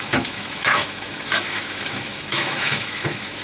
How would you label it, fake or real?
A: fake